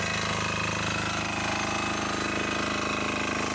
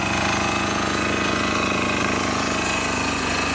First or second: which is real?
first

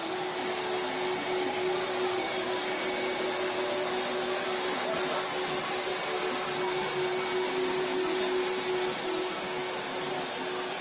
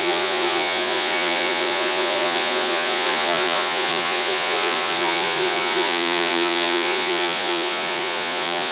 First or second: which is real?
first